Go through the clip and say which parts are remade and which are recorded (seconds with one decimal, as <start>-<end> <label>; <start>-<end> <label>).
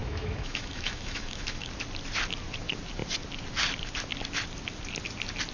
0.0-1.7 remade; 1.7-5.5 recorded